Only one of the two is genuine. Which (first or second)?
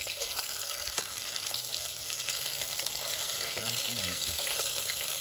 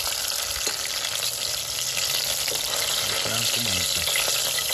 second